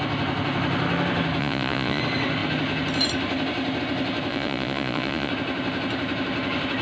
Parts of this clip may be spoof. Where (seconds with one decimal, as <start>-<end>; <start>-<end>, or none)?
1.4-2.0; 4.3-5.3